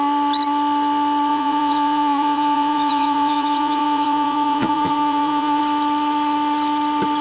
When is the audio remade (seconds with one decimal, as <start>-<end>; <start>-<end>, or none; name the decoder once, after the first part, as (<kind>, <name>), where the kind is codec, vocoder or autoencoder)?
1.3-5.6 (vocoder, Vocos)

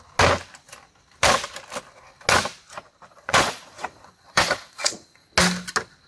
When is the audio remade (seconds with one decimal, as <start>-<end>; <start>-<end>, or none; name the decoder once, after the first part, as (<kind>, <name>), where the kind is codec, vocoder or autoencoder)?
3.1-5.3 (vocoder, Vocos)

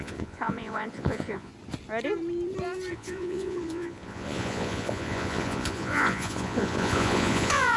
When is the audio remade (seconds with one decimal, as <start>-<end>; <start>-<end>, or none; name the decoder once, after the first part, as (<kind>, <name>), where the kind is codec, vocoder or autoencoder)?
0.0-1.5 (vocoder, Vocos); 2.9-7.8

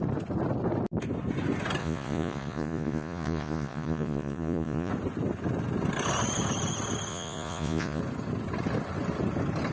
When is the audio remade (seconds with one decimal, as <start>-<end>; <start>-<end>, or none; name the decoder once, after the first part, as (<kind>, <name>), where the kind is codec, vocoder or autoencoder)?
1.8-4.9 (vocoder, Vocos); 7.1-8.0

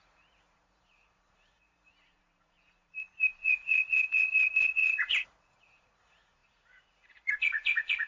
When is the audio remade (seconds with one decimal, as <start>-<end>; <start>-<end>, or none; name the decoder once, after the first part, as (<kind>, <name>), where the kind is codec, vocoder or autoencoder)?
0.0-8.1 (vocoder, Vocos)

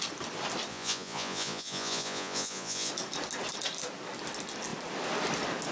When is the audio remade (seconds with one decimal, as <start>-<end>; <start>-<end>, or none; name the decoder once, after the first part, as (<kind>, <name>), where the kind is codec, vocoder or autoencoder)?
0.7-2.9 (vocoder, Vocos)